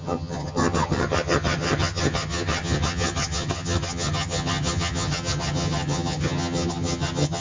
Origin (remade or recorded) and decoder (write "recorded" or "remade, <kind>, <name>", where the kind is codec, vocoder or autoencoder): remade, vocoder, HiFi-GAN